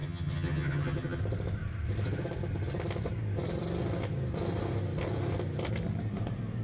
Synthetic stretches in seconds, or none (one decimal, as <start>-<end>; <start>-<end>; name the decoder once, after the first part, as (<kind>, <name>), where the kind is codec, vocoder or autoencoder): 0.0-1.2 (vocoder, HiFi-GAN)